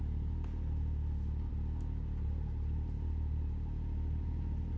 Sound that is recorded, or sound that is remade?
recorded